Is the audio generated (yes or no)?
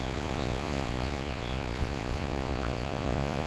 yes